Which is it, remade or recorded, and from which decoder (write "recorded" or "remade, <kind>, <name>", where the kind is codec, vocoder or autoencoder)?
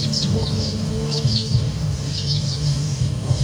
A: remade, codec, DAC